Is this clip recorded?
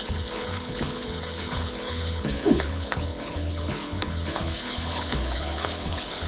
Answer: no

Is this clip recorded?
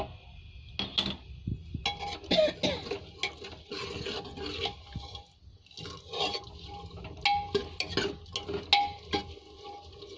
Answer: yes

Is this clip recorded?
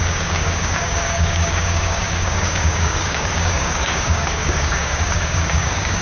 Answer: no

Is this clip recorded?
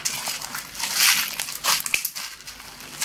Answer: yes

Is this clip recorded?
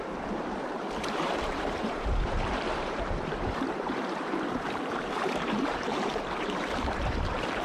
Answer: no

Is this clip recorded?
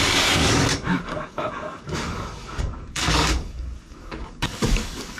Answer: no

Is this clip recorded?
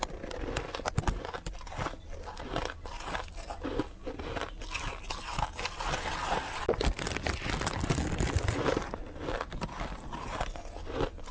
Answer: yes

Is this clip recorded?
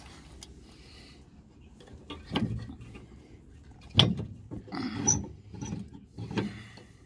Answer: yes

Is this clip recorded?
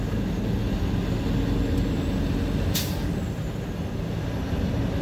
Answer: yes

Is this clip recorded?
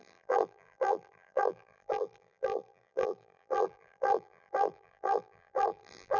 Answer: no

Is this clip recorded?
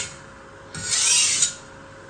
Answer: yes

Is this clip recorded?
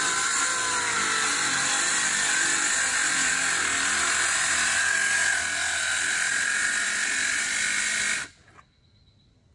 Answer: yes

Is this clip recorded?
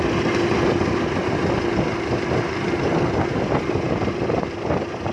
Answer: yes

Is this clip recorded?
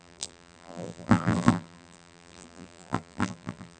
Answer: no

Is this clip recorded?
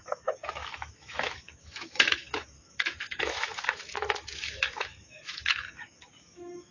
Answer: no